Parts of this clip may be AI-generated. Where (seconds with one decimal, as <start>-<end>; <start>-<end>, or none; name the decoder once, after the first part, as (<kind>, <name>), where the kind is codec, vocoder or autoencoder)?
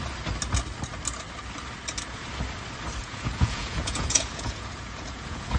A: 3.0-5.6 (vocoder, Vocos)